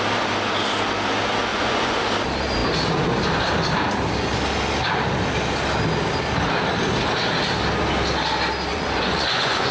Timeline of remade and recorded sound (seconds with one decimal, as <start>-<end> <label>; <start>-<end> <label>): 0.0-1.5 recorded; 1.5-2.0 remade; 2.0-8.7 recorded; 8.7-9.7 remade